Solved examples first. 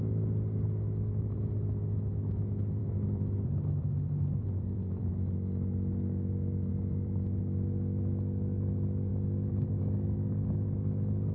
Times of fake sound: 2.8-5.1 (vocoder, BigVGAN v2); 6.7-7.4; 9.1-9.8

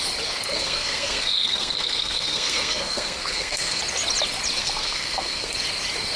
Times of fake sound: 0.5-3.8 (codec, SNAC); 4.6-5.5